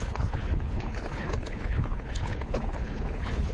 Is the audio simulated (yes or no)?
yes